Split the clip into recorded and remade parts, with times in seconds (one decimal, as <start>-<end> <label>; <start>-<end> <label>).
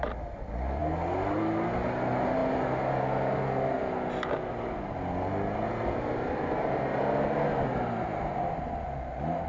0.0-9.5 recorded